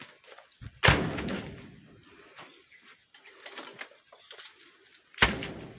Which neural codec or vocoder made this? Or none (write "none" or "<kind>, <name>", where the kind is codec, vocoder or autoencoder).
none